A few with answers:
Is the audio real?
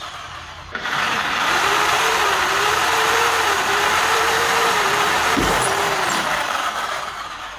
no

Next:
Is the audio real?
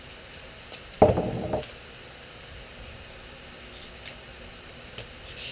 yes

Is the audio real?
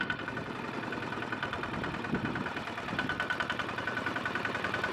no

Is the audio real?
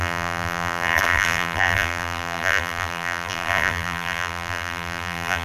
no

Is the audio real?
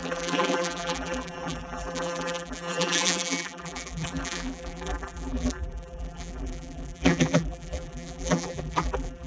no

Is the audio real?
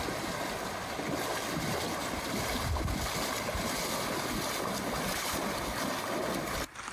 yes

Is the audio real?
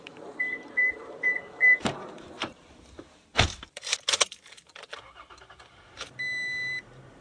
no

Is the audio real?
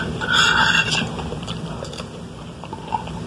yes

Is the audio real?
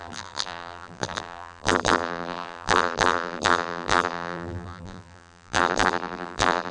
no